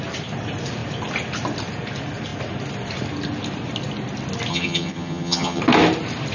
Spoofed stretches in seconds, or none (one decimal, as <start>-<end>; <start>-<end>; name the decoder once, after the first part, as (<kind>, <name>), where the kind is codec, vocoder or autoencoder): 4.5-5.6 (vocoder, HiFi-GAN)